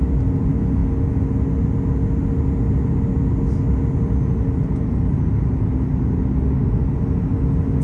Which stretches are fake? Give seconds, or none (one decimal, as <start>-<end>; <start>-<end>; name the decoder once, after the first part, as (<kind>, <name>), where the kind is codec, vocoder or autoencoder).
none